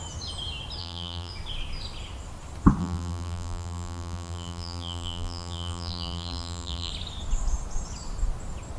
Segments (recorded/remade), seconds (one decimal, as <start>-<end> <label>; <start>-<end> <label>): 0.0-0.8 recorded; 0.8-1.3 remade; 1.3-2.8 recorded; 2.8-6.9 remade; 6.9-8.8 recorded